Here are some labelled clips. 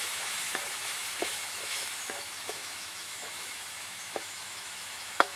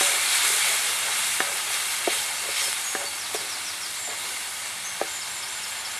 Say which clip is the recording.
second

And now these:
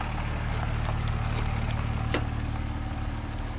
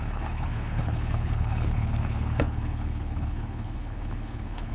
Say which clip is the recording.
first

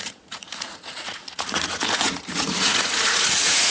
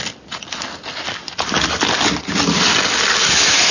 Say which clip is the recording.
second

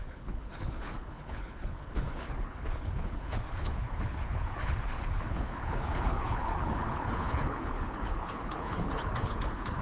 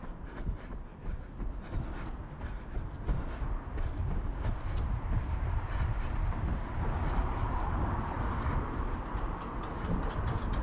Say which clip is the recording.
second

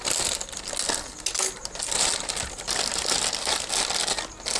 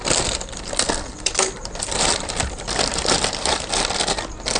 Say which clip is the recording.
first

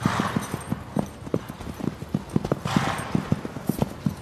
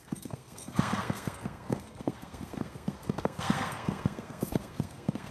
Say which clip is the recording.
first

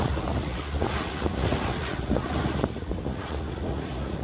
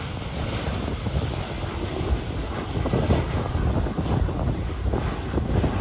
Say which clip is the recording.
second